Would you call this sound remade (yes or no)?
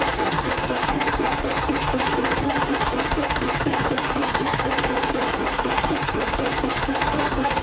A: yes